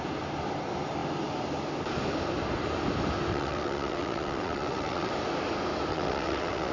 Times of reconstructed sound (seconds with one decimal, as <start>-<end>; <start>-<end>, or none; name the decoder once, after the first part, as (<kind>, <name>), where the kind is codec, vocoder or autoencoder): 3.3-5.1 (vocoder, WaveNeXt); 5.9-6.7